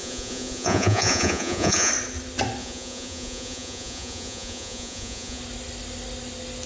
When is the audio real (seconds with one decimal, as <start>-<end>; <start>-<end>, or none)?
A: 1.9-2.6; 5.4-6.7